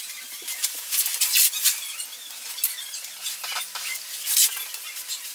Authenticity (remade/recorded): recorded